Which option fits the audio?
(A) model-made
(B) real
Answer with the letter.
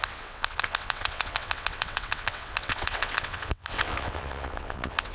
A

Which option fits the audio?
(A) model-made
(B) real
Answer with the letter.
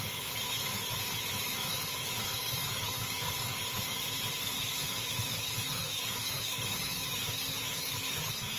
A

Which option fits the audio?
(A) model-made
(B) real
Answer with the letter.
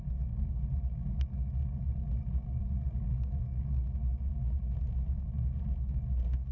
B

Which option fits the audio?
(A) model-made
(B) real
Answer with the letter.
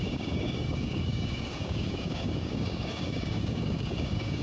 A